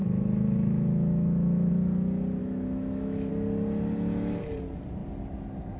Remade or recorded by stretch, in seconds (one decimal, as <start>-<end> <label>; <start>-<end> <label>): 0.0-1.7 remade; 1.7-2.4 recorded; 2.4-3.3 remade; 3.3-5.8 recorded